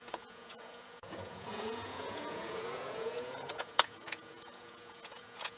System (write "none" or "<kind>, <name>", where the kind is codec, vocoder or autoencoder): vocoder, Vocos